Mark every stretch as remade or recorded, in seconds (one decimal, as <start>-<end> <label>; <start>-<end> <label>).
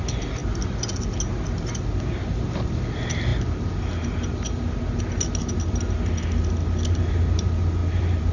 0.0-7.8 recorded; 7.8-8.3 remade